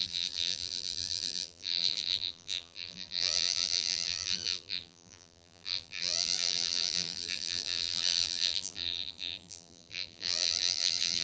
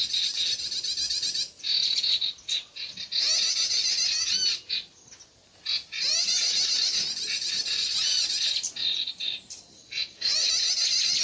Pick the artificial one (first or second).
first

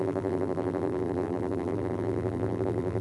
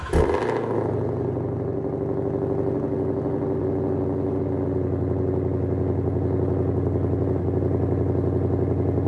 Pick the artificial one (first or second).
first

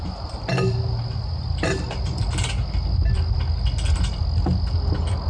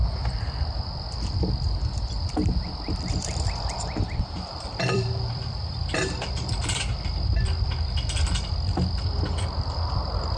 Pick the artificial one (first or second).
second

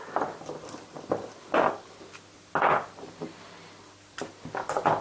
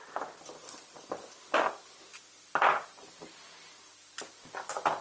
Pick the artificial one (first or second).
second